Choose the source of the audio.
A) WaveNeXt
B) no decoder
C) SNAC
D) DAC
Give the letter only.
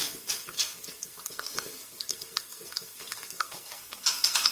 C